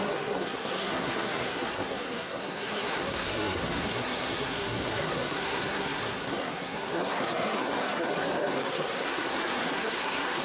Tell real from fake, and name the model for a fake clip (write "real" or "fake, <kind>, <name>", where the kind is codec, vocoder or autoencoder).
fake, codec, SNAC